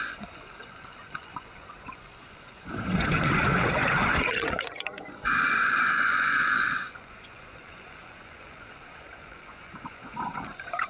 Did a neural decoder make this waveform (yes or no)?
yes